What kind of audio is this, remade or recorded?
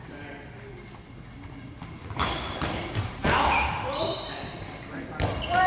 recorded